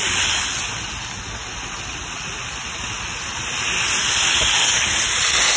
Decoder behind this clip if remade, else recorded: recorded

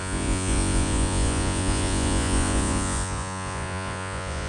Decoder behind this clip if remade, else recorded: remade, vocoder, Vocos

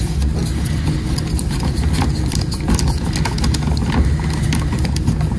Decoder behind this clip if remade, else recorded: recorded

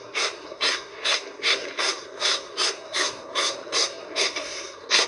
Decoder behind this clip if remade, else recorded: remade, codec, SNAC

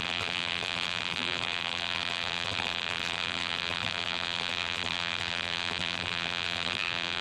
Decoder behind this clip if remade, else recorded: remade, vocoder, BigVGAN v2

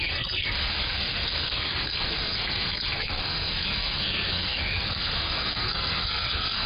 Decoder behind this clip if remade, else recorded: remade, codec, SNAC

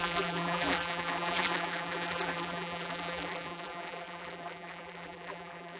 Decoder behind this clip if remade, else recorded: remade, vocoder, BigVGAN v2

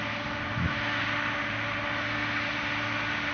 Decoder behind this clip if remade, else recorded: recorded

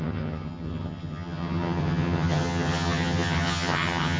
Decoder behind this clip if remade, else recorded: remade, vocoder, HiFi-GAN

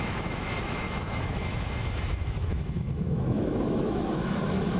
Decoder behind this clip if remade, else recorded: remade, autoencoder, DAC-VAE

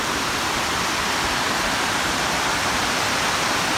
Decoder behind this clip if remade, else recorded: recorded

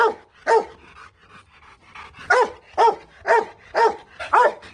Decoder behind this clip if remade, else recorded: recorded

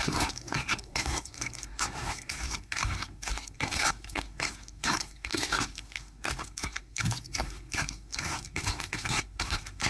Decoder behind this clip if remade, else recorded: remade, codec, SNAC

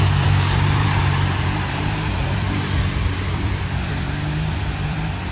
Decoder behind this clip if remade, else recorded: remade, vocoder, BigVGAN v2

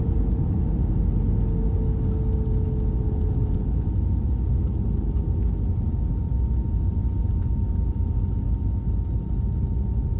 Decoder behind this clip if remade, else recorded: recorded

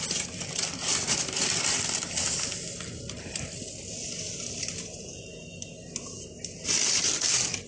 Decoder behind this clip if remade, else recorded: recorded